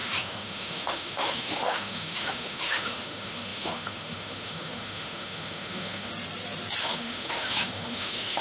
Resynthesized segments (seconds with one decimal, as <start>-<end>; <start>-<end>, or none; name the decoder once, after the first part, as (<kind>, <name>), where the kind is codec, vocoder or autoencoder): 0.0-6.1 (autoencoder, DAC-VAE); 6.8-8.4